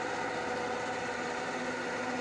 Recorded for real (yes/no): yes